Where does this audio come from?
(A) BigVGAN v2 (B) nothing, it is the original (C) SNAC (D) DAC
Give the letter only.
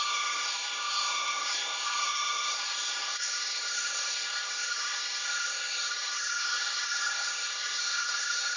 C